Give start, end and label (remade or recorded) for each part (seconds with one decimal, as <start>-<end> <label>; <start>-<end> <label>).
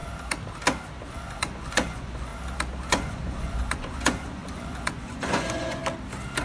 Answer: 0.0-1.1 recorded; 1.1-2.3 remade; 2.3-2.9 recorded; 2.9-5.8 remade; 5.8-6.4 recorded